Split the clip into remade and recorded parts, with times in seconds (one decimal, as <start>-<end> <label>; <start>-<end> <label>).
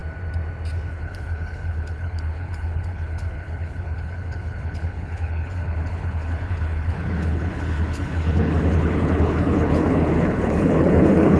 0.0-0.9 recorded; 0.9-11.4 remade